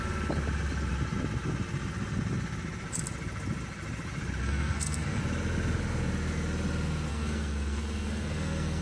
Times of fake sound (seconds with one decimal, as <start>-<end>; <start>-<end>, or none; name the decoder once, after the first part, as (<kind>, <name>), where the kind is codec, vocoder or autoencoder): 4.4-5.2 (codec, SNAC); 7.1-8.8